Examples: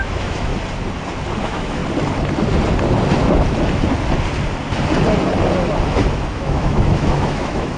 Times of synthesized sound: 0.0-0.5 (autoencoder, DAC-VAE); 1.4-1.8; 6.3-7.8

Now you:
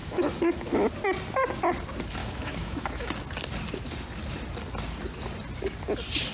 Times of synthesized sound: 0.0-0.9 (autoencoder, DAC-VAE); 2.2-3.1